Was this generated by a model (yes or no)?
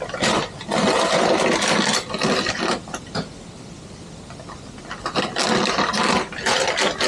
no